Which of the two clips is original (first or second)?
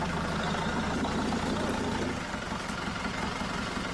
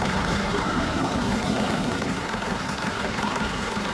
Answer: first